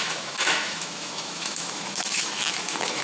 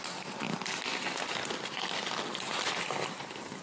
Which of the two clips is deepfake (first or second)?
first